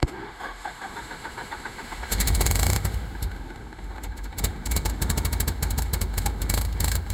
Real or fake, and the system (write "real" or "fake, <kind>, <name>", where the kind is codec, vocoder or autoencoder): fake, autoencoder, DAC-VAE